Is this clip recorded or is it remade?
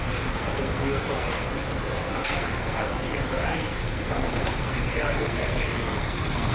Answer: remade